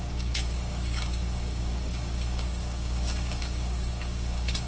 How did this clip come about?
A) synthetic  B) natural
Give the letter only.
A